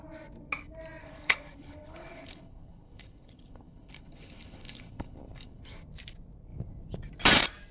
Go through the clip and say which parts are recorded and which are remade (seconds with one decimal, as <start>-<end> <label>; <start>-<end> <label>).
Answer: 0.0-1.0 recorded; 1.0-5.6 remade; 5.6-7.7 recorded